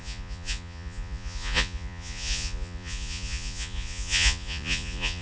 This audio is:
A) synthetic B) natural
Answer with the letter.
A